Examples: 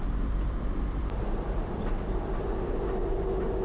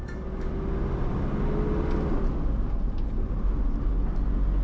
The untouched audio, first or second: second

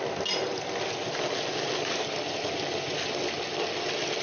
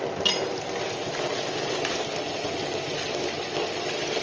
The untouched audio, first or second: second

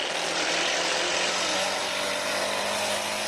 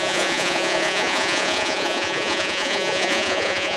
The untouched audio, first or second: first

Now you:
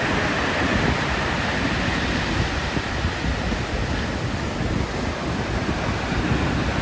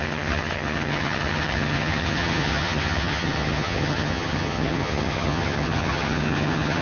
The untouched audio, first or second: first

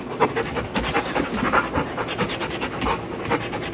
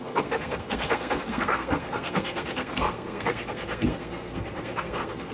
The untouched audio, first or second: first